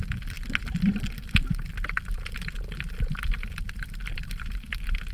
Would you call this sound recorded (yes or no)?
yes